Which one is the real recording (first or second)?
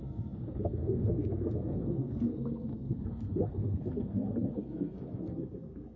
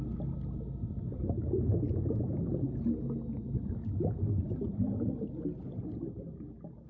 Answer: second